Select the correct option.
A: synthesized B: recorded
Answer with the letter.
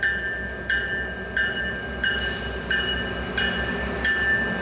B